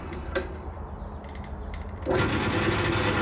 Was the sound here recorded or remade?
recorded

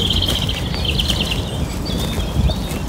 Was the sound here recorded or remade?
recorded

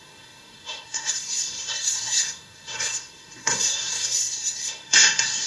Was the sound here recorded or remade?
remade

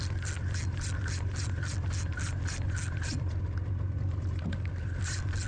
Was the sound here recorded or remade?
recorded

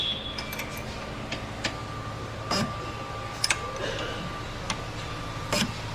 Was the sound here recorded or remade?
recorded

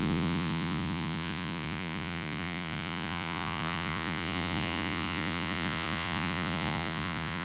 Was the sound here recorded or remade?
remade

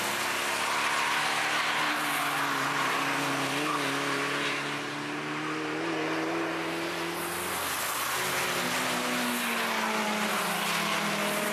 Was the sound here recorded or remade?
recorded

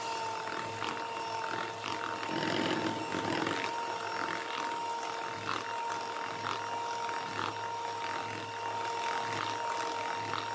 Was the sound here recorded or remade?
recorded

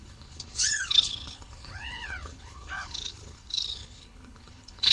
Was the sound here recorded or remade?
remade